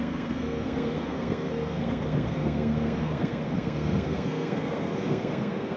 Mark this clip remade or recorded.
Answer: remade